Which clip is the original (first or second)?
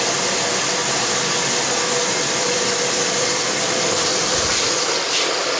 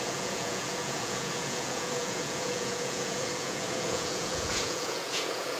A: first